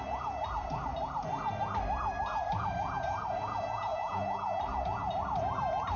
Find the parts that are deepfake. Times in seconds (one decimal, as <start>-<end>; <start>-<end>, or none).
0.0-0.9; 3.0-6.0